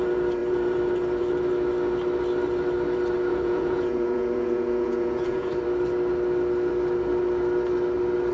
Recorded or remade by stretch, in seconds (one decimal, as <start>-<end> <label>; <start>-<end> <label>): 0.0-3.3 recorded; 3.3-5.5 remade; 5.5-8.3 recorded